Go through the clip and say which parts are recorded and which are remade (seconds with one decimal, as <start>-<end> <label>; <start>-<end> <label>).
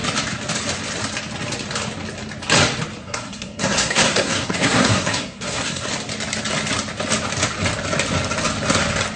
0.0-3.0 recorded; 3.0-5.9 remade; 5.9-9.2 recorded